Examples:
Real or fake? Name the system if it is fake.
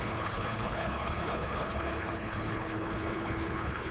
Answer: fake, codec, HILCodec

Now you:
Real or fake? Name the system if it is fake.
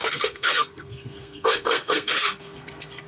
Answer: fake, codec, SNAC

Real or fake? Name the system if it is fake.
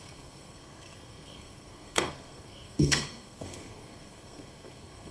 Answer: fake, codec, SNAC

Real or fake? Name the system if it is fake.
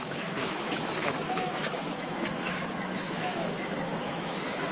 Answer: fake, autoencoder, DAC-VAE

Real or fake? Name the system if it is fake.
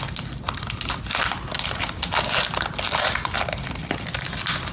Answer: real